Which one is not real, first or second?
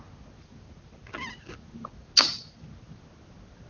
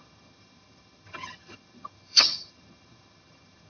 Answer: second